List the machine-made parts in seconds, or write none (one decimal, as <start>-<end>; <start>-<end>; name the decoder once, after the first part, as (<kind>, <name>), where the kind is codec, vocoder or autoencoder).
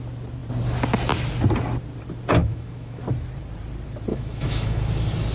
2.4-3.0 (autoencoder, DAC-VAE); 4.1-4.8